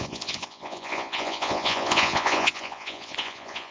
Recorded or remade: remade